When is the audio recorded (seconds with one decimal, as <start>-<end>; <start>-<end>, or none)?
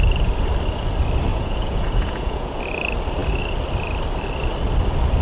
0.0-1.3; 2.6-5.2